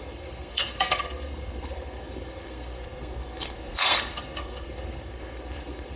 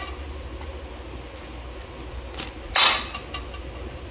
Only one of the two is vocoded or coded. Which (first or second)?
first